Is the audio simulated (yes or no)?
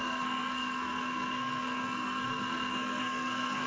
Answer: yes